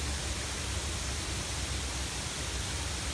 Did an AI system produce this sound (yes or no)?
no